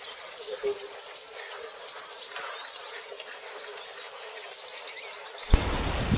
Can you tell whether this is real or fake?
real